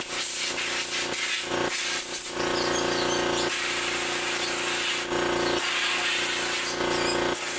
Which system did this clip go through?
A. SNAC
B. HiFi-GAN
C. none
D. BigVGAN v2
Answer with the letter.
C